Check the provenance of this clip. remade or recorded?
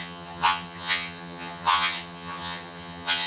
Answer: remade